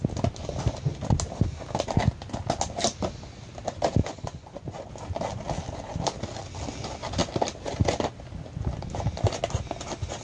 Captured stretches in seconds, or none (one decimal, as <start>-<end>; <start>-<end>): 0.0-4.0; 4.9-10.2